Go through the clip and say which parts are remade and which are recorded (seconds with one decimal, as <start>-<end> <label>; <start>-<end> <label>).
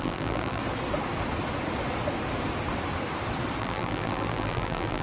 0.0-0.6 remade; 0.6-3.6 recorded; 3.6-5.0 remade